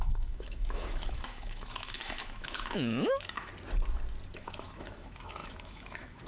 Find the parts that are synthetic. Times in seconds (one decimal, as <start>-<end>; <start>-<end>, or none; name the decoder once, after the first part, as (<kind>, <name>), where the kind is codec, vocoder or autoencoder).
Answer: 0.0-3.5 (autoencoder, DAC-VAE); 4.3-6.3

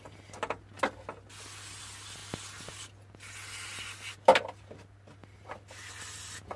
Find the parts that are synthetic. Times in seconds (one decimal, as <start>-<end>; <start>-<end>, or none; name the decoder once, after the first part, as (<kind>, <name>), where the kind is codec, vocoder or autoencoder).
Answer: none

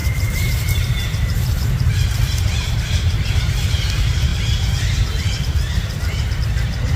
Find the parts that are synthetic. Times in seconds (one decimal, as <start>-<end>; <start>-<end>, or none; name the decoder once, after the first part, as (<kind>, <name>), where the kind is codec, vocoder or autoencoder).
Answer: 0.0-3.3 (vocoder, BigVGAN v2)

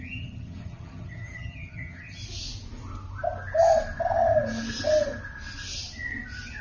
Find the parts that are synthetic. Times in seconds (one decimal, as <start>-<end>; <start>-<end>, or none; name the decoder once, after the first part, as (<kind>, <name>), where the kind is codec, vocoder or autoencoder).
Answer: 0.0-2.2 (vocoder, HiFi-GAN)

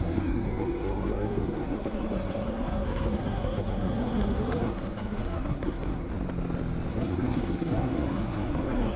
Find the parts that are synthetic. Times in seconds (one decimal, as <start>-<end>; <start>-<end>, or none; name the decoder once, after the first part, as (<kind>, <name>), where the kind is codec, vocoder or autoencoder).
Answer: 0.0-6.1 (codec, SNAC); 6.9-9.0

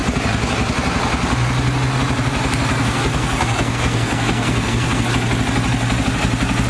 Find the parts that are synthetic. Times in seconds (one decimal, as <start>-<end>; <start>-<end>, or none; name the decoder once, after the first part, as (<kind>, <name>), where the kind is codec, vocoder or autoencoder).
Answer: 2.7-5.0 (codec, SNAC)

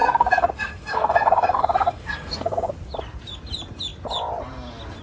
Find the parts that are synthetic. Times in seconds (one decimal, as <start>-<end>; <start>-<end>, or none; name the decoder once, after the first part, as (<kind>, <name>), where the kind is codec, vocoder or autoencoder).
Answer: 0.0-2.7 (codec, SNAC)

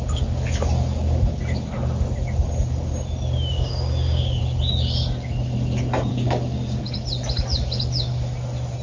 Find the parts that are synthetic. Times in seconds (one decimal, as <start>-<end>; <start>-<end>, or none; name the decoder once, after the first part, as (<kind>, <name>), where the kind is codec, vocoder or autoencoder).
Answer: 3.5-4.4 (codec, DAC); 6.1-6.8